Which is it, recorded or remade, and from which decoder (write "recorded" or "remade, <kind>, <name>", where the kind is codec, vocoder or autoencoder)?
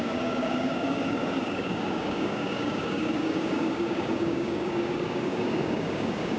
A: remade, codec, DAC